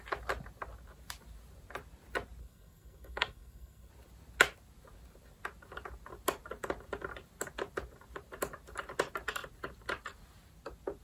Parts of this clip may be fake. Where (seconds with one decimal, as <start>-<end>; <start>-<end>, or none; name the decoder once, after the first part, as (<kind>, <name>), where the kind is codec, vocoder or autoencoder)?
2.4-3.9 (codec, SNAC)